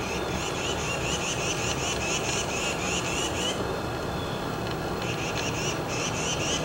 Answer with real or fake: fake